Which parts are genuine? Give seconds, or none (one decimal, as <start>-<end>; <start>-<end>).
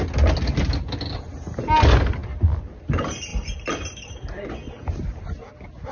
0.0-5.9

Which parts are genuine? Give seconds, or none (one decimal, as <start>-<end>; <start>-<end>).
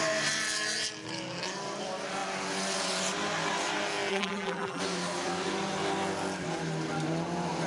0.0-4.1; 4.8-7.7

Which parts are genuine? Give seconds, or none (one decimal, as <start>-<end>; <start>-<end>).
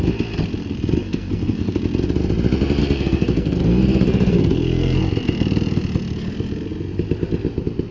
0.0-0.6; 1.8-2.8; 5.0-7.9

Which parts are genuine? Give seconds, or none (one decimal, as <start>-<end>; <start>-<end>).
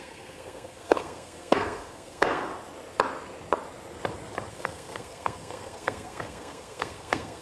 2.5-4.5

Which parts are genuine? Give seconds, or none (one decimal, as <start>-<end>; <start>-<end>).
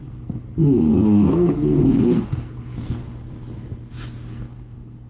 0.4-0.9; 3.0-4.3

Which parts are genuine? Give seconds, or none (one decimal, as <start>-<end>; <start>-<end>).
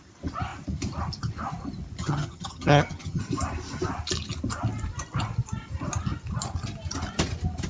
0.0-2.0; 3.2-7.7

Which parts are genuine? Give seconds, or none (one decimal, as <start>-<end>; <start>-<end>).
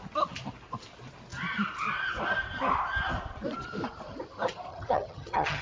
0.0-4.7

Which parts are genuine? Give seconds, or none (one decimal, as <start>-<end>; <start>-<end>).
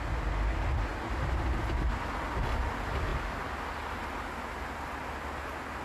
0.0-5.8